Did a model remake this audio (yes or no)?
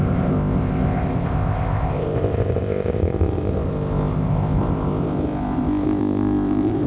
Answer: yes